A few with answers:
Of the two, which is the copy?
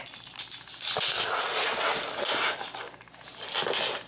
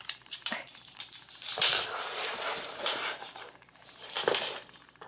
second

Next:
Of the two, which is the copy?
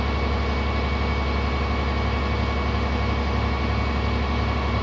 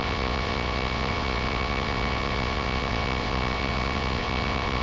second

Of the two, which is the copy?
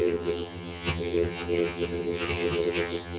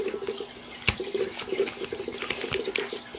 first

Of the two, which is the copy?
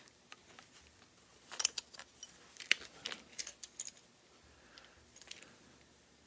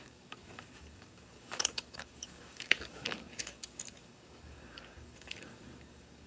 second